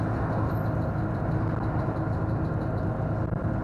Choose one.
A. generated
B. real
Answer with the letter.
B